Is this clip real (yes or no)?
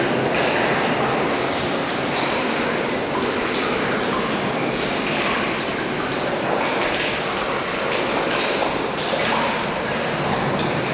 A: yes